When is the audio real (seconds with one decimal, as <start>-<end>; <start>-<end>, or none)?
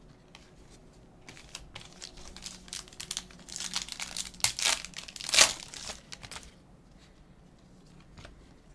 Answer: 0.0-8.7